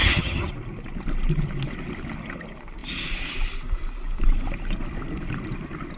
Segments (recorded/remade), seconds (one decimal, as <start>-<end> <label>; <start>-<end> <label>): 0.0-0.5 remade; 0.5-6.0 recorded